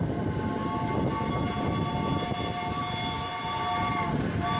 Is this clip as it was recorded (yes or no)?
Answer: yes